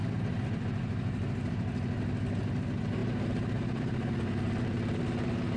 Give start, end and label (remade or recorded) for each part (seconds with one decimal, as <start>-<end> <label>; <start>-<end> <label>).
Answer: 0.0-5.6 recorded